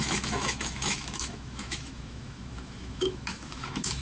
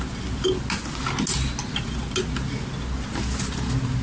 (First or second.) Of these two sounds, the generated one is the first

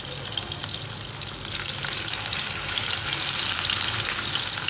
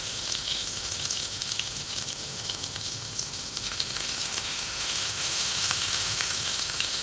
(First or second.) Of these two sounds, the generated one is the second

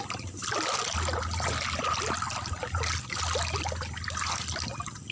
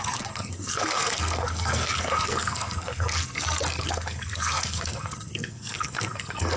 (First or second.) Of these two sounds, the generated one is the second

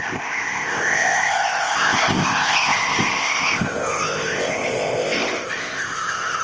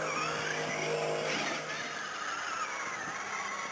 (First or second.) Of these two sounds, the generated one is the first